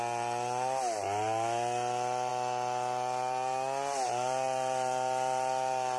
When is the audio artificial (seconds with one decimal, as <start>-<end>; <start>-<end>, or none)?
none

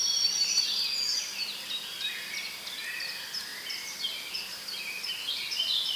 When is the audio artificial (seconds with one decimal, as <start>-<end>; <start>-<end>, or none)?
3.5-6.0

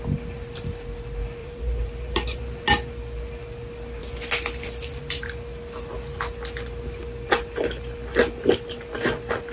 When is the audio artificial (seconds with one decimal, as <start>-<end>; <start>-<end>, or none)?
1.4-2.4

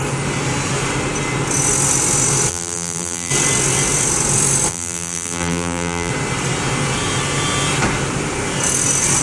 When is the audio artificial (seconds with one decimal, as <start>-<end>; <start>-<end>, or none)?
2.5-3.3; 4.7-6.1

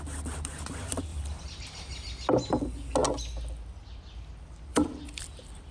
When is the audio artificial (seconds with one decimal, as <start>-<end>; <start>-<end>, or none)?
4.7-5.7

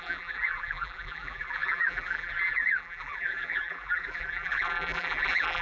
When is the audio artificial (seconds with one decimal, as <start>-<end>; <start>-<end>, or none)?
0.0-5.6

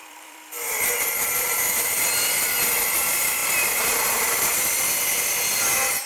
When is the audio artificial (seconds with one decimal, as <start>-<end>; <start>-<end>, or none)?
0.0-2.3; 3.4-4.9

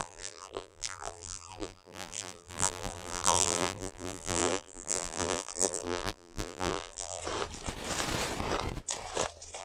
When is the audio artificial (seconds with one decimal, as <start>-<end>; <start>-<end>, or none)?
0.0-7.2